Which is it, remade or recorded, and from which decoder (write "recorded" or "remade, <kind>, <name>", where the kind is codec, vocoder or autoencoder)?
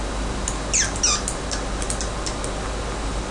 recorded